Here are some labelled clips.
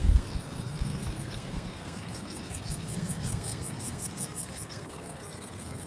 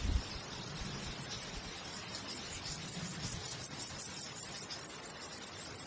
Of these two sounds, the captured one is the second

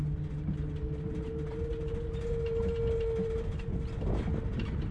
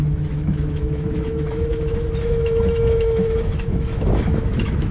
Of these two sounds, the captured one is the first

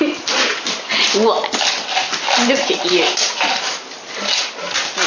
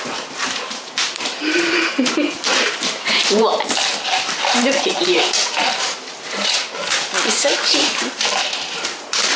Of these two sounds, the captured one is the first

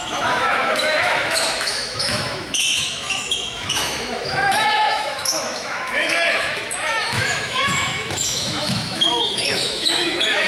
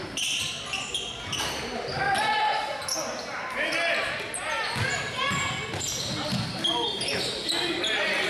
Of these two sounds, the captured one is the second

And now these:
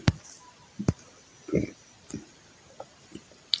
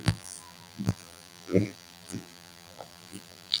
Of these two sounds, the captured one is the first